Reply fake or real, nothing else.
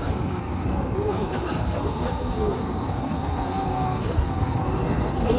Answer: fake